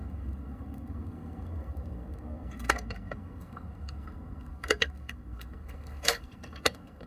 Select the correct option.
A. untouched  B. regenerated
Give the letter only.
B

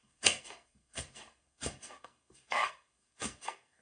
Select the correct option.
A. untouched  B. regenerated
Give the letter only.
B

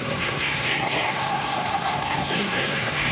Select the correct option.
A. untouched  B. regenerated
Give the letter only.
B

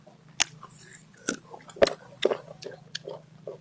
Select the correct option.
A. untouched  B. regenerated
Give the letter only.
A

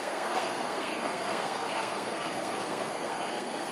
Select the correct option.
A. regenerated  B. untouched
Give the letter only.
A